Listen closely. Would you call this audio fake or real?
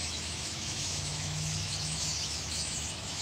fake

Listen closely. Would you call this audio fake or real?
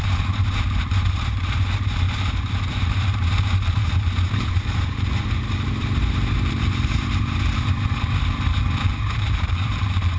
fake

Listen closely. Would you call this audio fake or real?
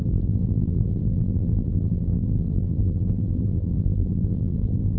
fake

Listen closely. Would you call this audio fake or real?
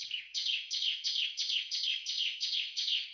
fake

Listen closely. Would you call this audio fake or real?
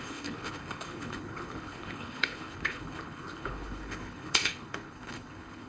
fake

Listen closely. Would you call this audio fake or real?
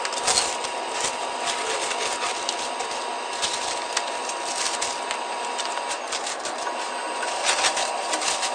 real